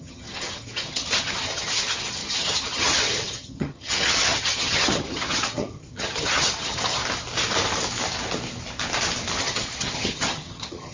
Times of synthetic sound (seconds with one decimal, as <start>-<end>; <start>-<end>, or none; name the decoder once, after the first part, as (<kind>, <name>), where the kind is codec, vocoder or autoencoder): 0.0-7.0 (vocoder, HiFi-GAN); 9.4-10.9